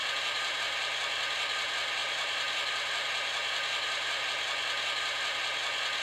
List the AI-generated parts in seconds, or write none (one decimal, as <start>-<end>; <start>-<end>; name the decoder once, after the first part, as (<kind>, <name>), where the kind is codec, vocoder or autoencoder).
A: 0.0-0.6 (vocoder, BigVGAN v2); 2.0-4.2